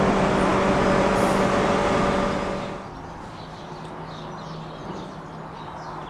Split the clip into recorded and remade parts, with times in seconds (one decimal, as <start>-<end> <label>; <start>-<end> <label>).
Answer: 0.0-6.1 recorded